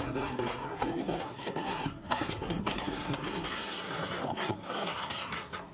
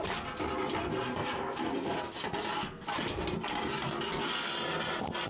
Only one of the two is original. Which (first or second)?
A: second